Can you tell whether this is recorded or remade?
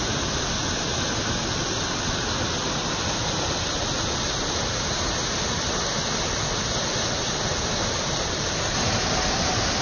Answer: recorded